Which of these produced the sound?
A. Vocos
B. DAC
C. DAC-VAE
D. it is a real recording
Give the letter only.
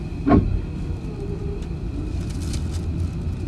D